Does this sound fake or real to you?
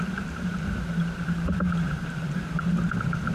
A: fake